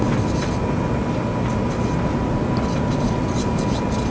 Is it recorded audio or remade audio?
recorded